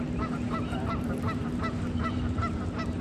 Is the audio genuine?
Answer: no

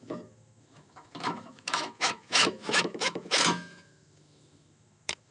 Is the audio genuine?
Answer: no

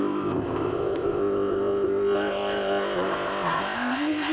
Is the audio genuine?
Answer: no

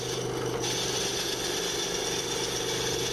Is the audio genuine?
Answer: yes